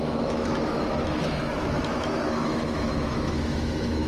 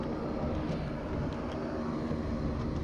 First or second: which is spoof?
first